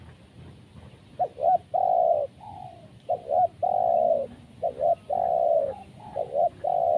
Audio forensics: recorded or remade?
recorded